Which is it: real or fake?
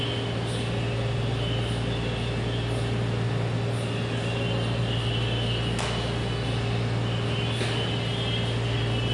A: real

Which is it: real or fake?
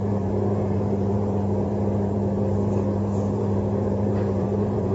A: fake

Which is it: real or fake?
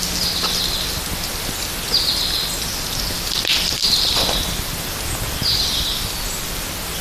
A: real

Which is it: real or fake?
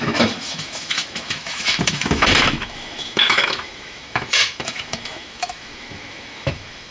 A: fake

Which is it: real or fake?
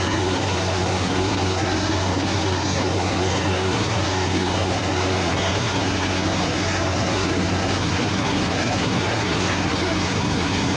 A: fake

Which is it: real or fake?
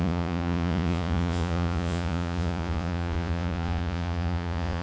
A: fake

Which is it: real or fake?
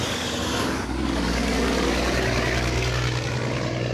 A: fake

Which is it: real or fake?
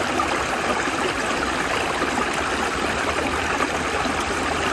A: real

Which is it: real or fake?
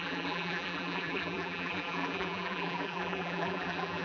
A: fake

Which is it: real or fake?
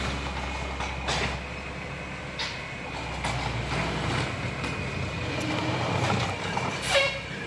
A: real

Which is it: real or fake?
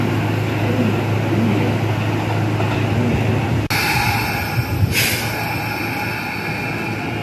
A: real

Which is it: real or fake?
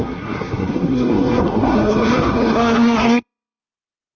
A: fake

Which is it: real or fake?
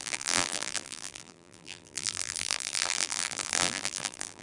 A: fake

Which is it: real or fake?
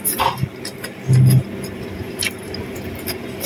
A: real